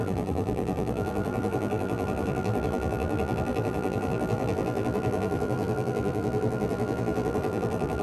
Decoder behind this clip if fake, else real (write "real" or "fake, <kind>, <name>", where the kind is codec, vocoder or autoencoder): fake, vocoder, BigVGAN v2